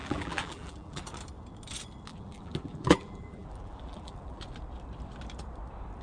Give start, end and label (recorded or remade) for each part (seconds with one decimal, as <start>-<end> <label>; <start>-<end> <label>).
0.0-1.0 remade; 1.0-2.1 recorded; 2.1-4.4 remade; 4.4-6.0 recorded